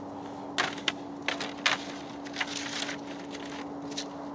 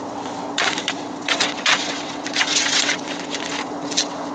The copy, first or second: second